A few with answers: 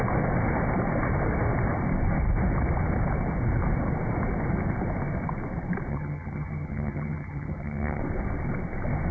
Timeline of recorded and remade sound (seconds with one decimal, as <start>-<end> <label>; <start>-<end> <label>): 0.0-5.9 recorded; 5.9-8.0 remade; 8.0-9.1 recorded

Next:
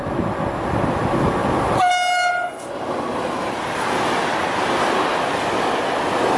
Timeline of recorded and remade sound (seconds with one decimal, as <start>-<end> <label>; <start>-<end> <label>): 0.0-6.4 recorded

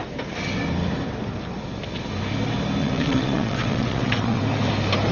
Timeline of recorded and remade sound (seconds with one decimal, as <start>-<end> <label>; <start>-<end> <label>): 0.0-2.8 recorded; 2.8-4.4 remade; 4.4-5.1 recorded

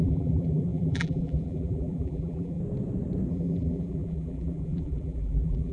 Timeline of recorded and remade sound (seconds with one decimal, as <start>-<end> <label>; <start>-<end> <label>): 0.0-2.6 remade; 2.6-3.3 recorded; 3.3-5.7 remade